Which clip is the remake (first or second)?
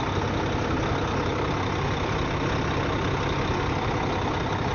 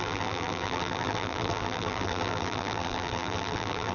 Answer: second